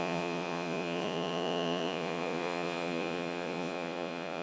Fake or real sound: fake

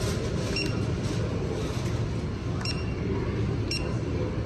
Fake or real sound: real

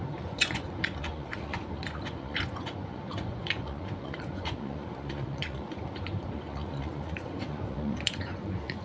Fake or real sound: fake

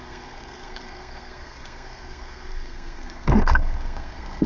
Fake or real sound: fake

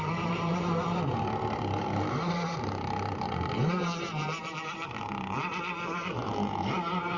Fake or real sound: fake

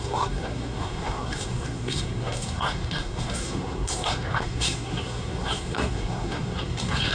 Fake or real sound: fake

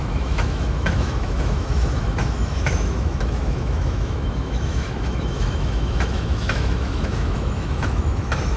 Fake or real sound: fake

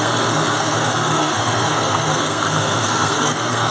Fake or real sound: fake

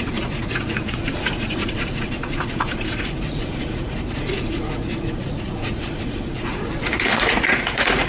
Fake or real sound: fake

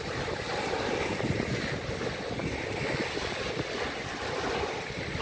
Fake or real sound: real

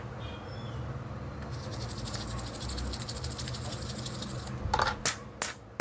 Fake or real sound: real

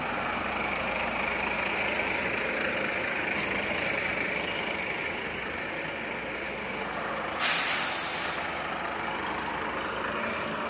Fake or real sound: real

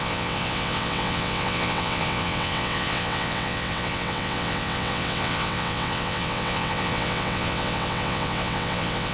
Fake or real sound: fake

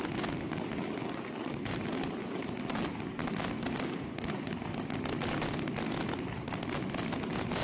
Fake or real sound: real